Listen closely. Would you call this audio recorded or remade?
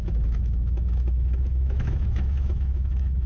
remade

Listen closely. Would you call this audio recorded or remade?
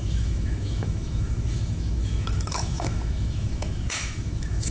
remade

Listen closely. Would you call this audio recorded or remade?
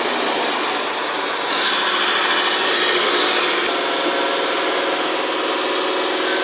recorded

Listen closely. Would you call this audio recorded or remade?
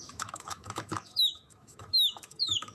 remade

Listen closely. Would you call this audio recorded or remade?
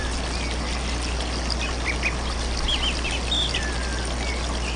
recorded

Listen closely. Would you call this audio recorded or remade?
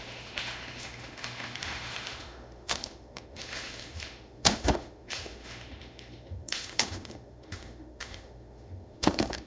remade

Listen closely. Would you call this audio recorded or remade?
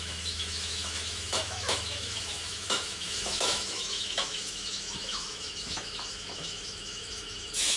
remade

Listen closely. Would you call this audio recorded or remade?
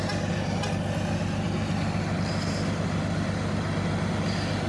recorded